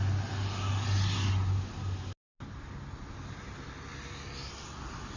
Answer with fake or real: real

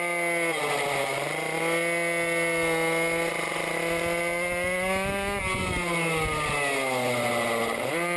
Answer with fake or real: real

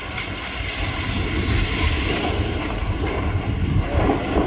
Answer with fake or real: real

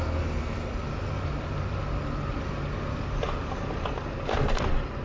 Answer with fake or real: real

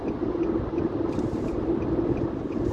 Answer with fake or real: real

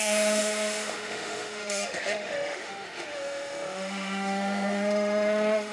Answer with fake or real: fake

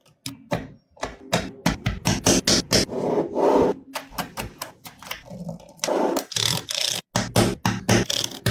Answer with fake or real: real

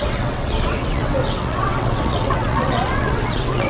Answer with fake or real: fake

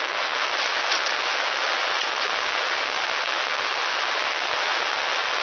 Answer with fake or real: fake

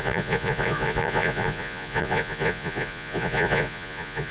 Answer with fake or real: fake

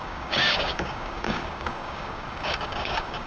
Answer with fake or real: fake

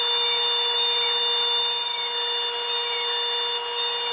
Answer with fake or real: real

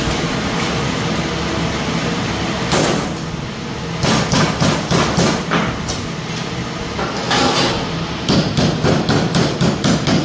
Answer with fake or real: real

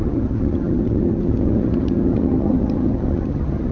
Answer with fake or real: fake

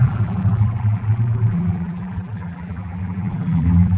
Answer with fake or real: fake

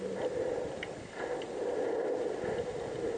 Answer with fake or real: real